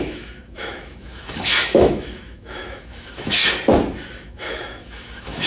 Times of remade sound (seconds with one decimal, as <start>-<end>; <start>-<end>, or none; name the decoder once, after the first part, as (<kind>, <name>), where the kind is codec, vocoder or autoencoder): 0.0-3.4 (autoencoder, DAC-VAE); 4.2-5.5